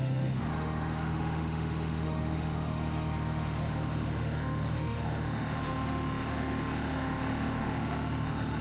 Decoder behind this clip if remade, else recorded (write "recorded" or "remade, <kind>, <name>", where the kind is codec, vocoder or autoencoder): remade, autoencoder, DAC-VAE